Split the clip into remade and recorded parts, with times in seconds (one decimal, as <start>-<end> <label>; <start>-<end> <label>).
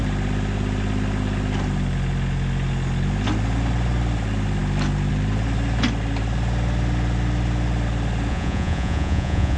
0.0-8.3 recorded; 8.3-9.6 remade